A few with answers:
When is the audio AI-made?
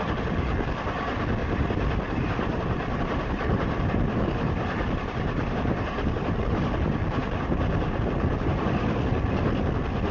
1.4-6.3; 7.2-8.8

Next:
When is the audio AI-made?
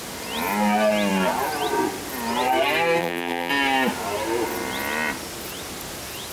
3.0-3.5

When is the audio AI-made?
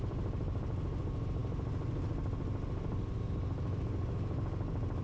none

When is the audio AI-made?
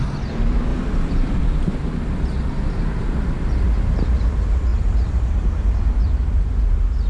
0.7-1.4; 4.7-6.5